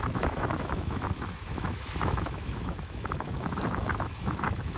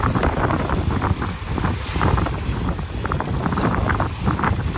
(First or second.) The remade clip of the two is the first